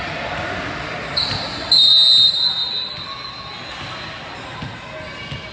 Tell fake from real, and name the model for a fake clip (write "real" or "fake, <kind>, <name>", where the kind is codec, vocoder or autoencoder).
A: real